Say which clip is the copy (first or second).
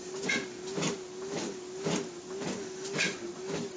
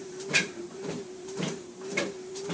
second